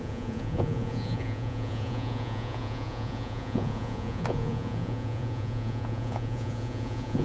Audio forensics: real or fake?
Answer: fake